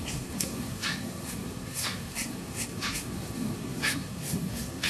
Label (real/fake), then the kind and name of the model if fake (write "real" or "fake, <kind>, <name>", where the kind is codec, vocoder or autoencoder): fake, codec, SNAC